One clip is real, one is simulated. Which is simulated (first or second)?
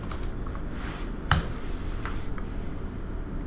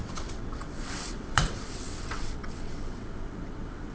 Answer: second